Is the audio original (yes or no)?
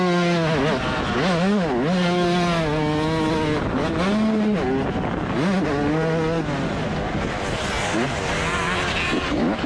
yes